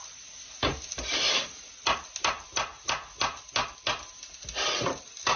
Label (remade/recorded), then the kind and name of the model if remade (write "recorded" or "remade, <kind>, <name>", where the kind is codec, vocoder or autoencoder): recorded